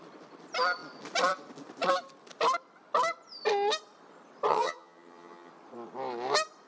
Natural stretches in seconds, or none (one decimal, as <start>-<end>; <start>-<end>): 0.0-4.5; 5.5-6.7